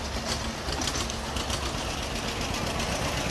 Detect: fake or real real